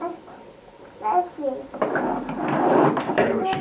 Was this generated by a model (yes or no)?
no